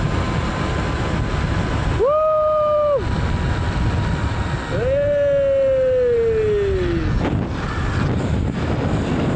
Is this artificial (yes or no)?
no